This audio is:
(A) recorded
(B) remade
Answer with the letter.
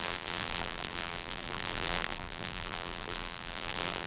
B